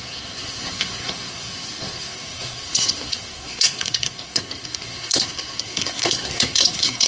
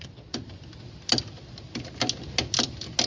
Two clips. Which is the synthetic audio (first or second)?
first